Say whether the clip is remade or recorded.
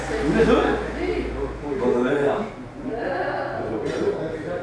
recorded